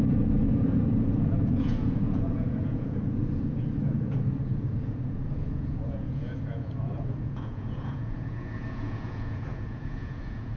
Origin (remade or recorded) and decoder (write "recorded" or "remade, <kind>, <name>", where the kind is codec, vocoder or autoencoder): remade, vocoder, Vocos